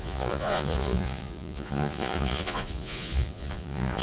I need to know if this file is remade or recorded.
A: remade